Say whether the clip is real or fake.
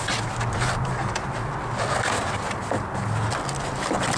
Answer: real